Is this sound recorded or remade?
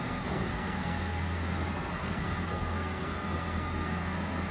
remade